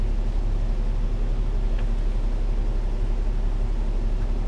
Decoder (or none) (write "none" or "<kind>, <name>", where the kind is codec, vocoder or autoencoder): none